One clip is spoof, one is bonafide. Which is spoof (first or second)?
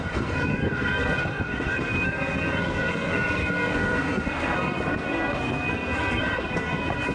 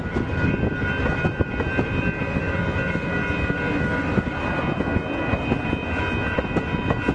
first